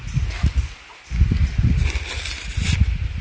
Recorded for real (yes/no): yes